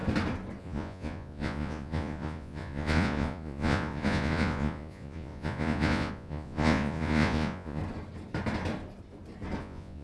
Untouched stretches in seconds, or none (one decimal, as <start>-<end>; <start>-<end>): 0.0-0.6; 7.8-9.6